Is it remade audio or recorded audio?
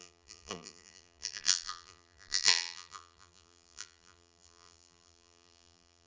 remade